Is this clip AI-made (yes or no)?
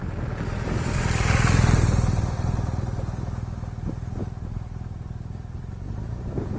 no